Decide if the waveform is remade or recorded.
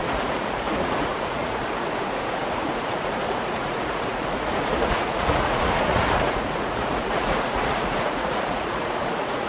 remade